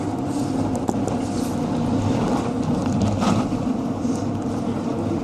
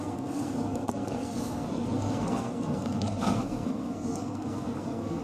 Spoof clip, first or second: second